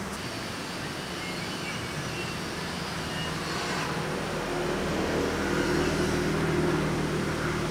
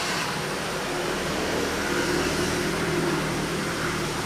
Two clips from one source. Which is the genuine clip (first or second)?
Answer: first